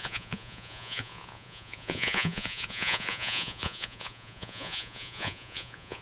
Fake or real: fake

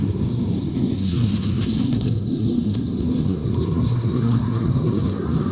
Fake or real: fake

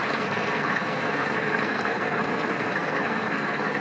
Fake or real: fake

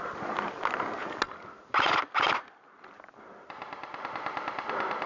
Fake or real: real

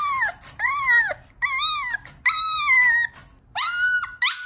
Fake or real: real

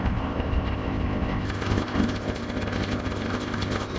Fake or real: fake